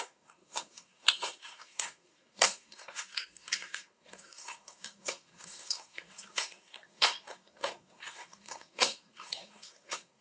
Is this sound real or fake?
fake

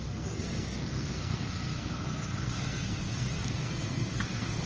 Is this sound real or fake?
fake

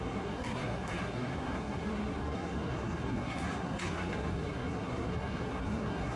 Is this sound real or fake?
fake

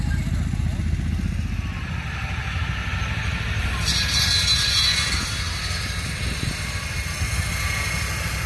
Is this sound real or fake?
real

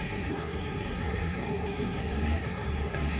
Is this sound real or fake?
fake